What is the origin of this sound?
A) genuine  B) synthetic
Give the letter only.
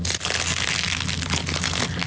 A